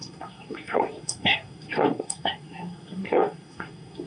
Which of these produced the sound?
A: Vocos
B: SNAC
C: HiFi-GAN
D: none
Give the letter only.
B